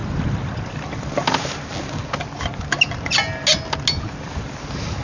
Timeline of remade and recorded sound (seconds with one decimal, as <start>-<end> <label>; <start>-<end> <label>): 0.0-1.0 remade; 1.0-5.0 recorded